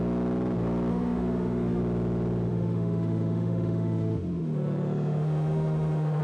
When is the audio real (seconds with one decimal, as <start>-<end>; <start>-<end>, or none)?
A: 0.0-0.9; 1.8-2.5